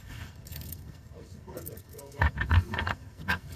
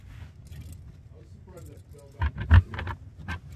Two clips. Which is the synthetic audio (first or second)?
first